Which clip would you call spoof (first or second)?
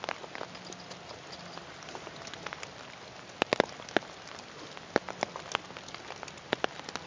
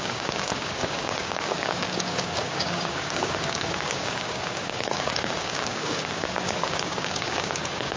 second